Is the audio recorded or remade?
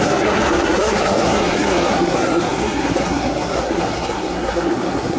remade